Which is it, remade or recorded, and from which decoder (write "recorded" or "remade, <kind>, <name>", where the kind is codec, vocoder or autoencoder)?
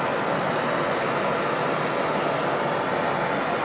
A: recorded